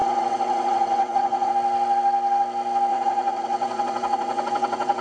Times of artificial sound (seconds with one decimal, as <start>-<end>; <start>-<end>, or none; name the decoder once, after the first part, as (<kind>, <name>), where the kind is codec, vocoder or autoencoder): 0.0-1.5 (vocoder, WaveNeXt); 2.9-5.0